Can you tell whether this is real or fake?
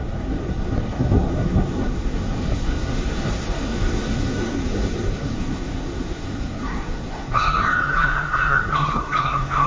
fake